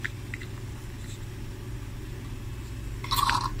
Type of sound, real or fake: real